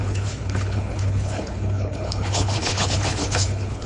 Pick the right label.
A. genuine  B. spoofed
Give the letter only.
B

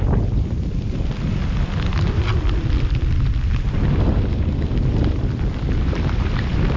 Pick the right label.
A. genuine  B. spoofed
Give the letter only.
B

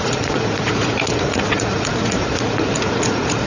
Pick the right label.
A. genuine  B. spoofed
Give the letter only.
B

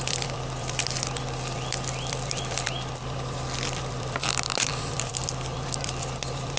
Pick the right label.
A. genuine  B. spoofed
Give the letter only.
B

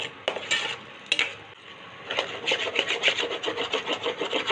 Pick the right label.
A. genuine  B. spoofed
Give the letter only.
A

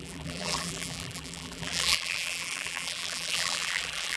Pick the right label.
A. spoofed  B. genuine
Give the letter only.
A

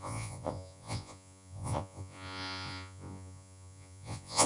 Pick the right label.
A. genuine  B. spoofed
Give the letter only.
B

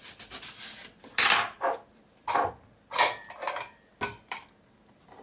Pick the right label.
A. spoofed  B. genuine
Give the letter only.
B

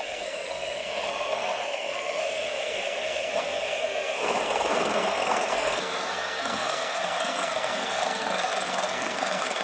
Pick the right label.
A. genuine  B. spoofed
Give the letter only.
B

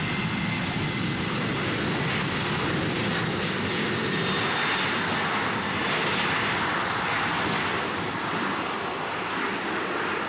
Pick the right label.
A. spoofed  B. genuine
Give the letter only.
B